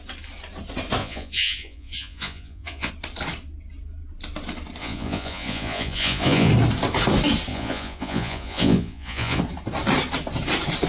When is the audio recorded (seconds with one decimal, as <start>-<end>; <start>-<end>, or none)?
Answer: 0.0-1.0; 2.9-4.8; 6.5-7.5; 9.4-10.9